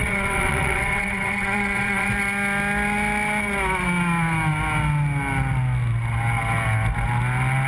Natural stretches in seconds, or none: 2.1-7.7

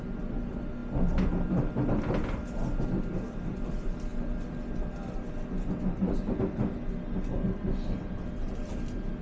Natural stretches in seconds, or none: 0.0-9.2

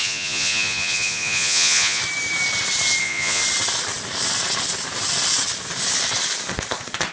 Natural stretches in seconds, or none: 2.0-3.0; 3.4-7.1

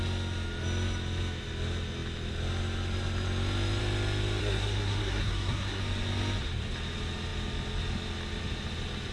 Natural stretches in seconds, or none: 0.0-4.4; 5.8-9.1

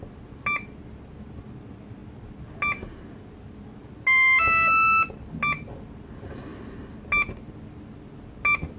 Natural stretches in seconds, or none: 0.0-8.8

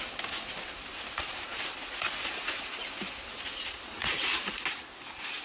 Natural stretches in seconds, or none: 0.0-5.4

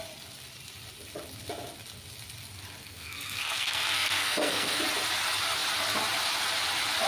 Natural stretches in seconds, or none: 0.0-2.8; 4.8-7.1